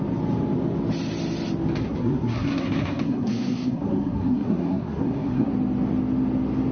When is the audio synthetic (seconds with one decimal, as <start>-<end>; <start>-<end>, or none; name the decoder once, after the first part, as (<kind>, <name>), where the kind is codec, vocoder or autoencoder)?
1.8-5.5 (codec, SNAC)